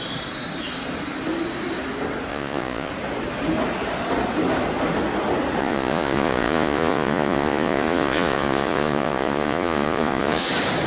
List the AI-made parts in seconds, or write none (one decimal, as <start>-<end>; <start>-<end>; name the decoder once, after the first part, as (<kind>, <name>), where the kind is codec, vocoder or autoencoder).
2.3-2.9 (vocoder, Vocos); 5.6-10.5